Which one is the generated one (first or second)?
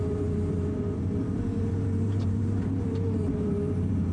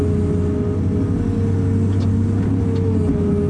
first